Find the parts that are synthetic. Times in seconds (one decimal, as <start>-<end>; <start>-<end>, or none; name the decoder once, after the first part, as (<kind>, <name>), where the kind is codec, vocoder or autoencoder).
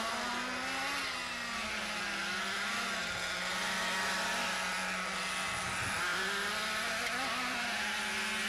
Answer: 6.1-7.6 (vocoder, BigVGAN v2)